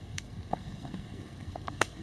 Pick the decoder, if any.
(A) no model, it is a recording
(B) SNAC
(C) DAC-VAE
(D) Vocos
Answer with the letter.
B